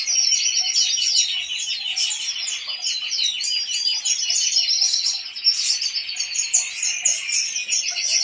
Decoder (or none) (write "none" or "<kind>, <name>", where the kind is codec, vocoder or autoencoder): none